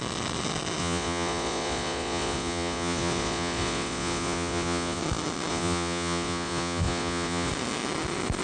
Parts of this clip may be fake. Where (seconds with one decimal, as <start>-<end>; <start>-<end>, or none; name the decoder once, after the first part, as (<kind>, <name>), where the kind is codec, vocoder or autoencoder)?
0.8-5.0 (vocoder, Vocos); 5.5-7.5

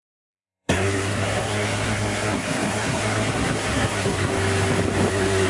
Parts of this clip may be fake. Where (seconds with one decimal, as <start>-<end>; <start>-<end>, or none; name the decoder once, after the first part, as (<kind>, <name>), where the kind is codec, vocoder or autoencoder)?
0.0-4.3 (codec, SNAC); 5.1-5.5

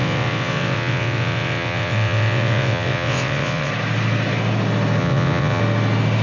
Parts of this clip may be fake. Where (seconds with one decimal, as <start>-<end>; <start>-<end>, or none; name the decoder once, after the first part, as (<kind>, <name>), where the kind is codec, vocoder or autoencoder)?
0.0-3.7 (vocoder, WaveNeXt); 5.0-5.6